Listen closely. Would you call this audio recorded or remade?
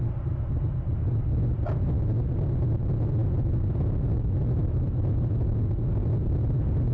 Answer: recorded